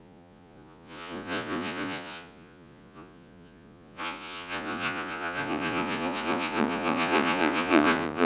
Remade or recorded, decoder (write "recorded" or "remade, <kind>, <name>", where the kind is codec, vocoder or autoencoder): remade, vocoder, Vocos